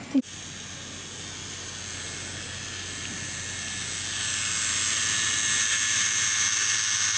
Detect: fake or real real